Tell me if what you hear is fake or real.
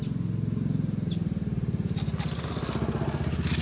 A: real